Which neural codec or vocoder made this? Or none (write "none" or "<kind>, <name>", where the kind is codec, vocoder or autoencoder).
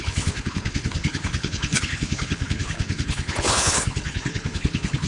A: codec, HILCodec